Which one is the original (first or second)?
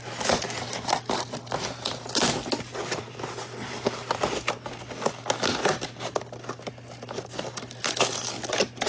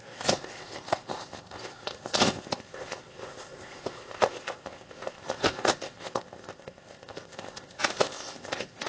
first